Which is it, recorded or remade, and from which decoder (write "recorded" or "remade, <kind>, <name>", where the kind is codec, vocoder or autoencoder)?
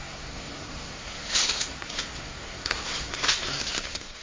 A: remade, codec, SNAC